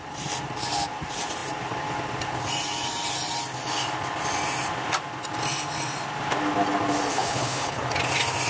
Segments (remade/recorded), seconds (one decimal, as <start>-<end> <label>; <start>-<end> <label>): 0.0-7.1 recorded; 7.1-7.8 remade; 7.8-8.5 recorded